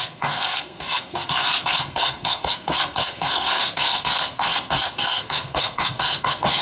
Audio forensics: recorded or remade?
remade